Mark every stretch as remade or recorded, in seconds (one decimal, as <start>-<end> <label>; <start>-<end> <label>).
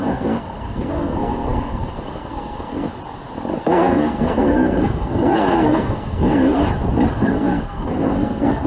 0.0-2.9 remade; 2.9-3.6 recorded; 3.6-6.6 remade; 6.6-7.1 recorded; 7.1-8.7 remade